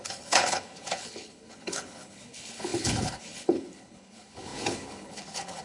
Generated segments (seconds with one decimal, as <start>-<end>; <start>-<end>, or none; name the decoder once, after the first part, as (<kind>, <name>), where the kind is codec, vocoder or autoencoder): 0.0-5.6 (codec, HILCodec)